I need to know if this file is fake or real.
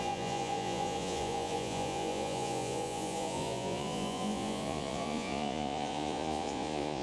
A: fake